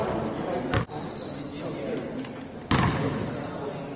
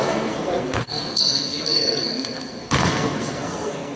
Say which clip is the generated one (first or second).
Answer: second